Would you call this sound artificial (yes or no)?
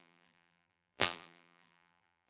yes